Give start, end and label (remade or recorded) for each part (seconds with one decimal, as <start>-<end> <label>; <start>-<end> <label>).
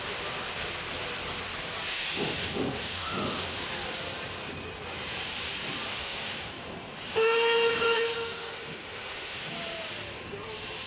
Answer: 0.0-1.9 recorded; 1.9-3.6 remade; 3.6-5.9 recorded; 5.9-6.5 remade; 6.5-7.1 recorded; 7.1-9.5 remade; 9.5-10.9 recorded